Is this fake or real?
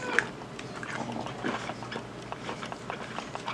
real